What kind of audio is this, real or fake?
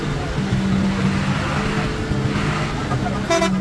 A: real